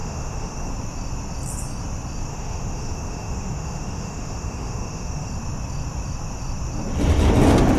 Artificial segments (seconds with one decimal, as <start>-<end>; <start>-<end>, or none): 0.0-0.7; 2.3-5.3

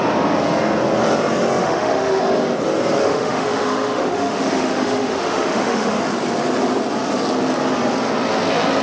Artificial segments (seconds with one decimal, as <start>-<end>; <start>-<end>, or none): 1.6-2.2; 3.0-6.0

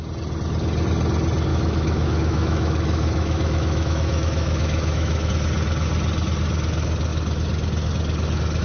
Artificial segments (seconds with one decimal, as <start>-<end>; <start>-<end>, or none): 1.5-5.3

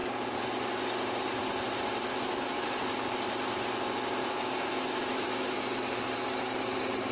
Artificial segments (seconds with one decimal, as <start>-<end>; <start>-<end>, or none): 2.1-2.8; 4.2-5.6